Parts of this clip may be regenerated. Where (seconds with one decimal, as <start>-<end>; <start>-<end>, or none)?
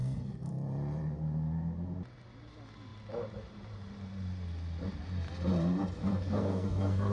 0.0-0.5; 6.0-7.1